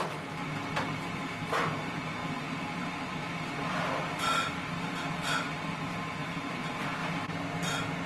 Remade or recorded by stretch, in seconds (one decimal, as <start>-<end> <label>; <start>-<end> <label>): 0.0-2.2 recorded; 2.2-5.8 remade; 5.8-8.1 recorded